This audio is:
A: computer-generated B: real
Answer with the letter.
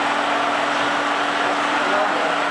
B